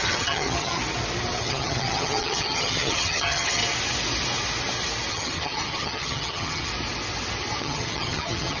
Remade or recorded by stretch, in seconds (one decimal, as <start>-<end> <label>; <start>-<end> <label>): 0.0-0.8 remade; 0.8-1.4 recorded; 1.4-3.6 remade; 3.6-5.1 recorded; 5.1-6.7 remade; 6.7-7.6 recorded; 7.6-8.6 remade